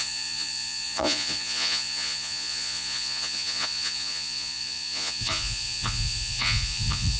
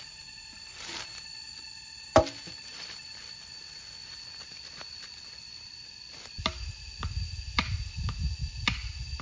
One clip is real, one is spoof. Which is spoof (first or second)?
first